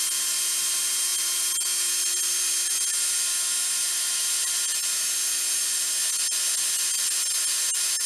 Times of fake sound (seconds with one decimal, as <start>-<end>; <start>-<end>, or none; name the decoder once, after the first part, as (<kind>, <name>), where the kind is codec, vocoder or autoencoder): none